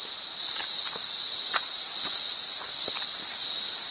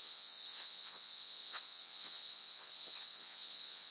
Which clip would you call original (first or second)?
first